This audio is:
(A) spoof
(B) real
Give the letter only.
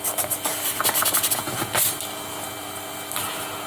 B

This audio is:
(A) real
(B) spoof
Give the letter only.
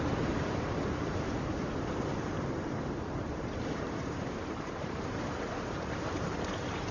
B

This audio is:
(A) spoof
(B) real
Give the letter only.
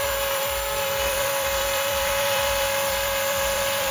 A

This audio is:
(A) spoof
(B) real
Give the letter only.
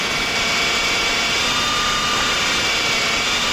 A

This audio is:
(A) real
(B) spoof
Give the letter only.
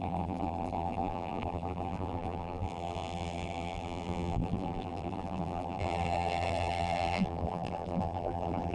B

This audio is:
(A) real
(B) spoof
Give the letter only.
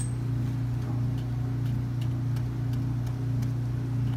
A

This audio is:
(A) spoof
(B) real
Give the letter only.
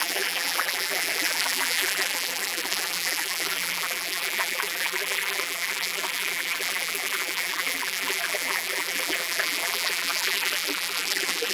A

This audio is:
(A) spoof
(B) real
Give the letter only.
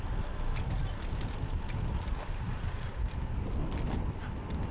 B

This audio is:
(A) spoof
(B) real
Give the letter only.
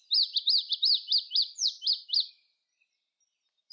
A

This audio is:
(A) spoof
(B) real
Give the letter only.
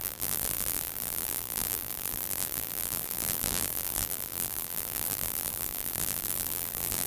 A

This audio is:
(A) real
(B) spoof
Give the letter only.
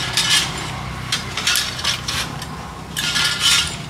B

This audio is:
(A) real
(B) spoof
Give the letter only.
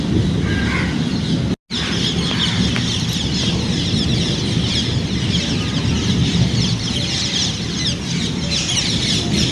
A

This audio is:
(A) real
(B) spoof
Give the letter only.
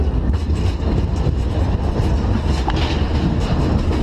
A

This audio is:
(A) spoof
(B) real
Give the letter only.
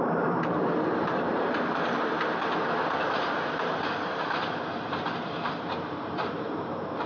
A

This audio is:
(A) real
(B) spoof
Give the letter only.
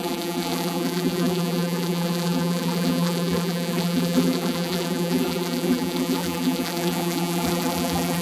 B